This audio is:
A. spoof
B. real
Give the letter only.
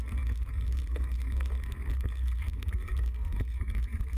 A